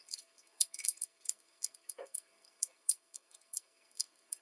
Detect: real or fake fake